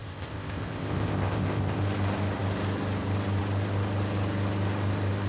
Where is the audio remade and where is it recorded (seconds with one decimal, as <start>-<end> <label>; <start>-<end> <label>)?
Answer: 0.0-1.8 remade; 1.8-5.3 recorded